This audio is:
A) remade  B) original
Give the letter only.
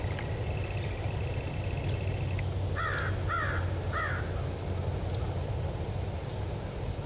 B